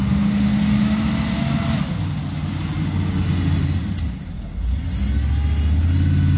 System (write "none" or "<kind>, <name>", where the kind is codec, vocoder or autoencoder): none